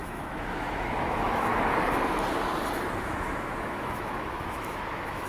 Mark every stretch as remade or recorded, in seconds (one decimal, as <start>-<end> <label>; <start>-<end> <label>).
0.0-1.5 remade; 1.5-3.0 recorded; 3.0-5.3 remade